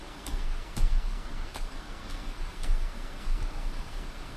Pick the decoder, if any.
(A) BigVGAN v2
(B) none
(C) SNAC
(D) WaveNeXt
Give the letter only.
C